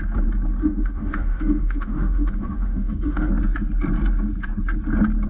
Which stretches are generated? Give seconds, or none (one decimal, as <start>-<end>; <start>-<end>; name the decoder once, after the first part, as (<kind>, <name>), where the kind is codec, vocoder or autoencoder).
0.6-3.3 (autoencoder, DAC-VAE)